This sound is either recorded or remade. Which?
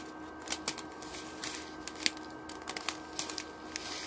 recorded